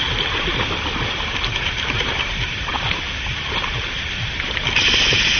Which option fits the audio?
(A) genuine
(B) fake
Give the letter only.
A